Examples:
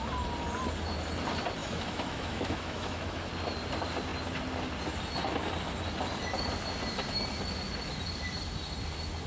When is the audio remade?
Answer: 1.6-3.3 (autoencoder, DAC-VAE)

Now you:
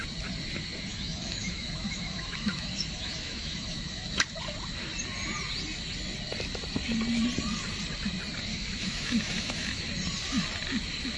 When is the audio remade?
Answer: 0.9-4.2 (autoencoder, DAC-VAE); 8.5-9.8

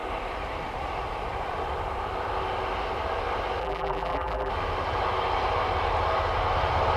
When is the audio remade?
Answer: 3.6-4.5 (vocoder, BigVGAN v2)

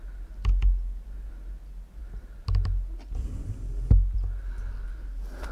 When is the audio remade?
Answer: none

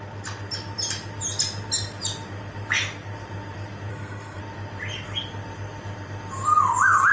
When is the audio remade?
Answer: 3.9-4.4 (codec, SNAC)